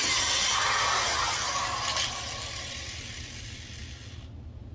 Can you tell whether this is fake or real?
real